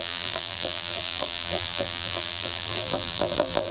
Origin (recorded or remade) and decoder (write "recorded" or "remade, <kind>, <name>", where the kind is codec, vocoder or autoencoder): remade, vocoder, BigVGAN v2